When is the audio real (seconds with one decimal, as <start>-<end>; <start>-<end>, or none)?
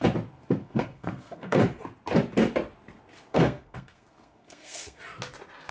0.0-0.6; 1.6-3.3; 5.0-5.7